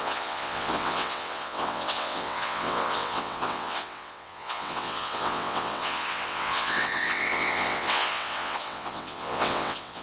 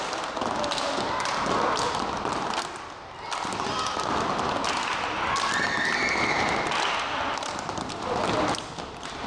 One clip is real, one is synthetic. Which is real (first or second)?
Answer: second